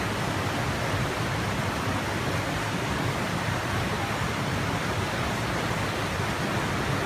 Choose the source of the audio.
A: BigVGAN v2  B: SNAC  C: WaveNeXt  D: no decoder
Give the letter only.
D